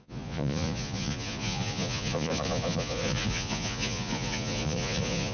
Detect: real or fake fake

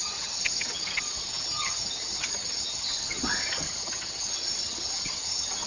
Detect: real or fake fake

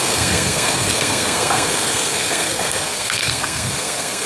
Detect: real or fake fake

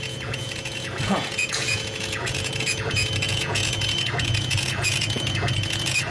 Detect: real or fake fake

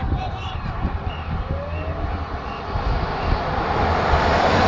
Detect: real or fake real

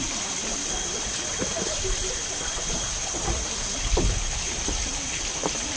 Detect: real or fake fake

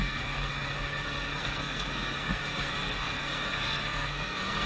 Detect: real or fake fake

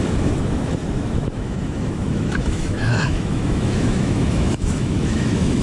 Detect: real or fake fake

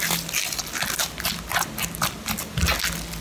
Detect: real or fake real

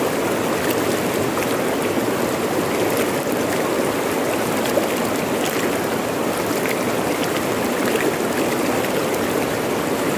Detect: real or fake real